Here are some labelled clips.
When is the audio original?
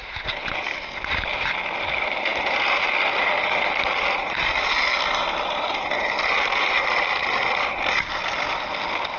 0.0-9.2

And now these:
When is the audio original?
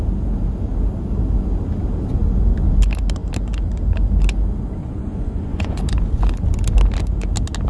0.0-4.8; 5.8-7.7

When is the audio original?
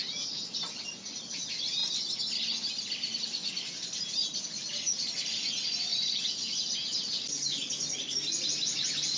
0.0-9.2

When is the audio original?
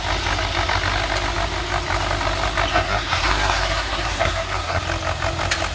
0.0-2.7; 4.8-5.7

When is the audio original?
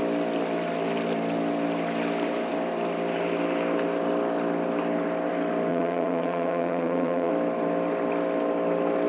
0.0-5.7; 7.3-9.1